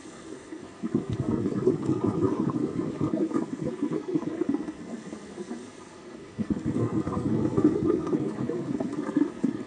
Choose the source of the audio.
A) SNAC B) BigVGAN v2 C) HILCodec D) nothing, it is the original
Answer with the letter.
A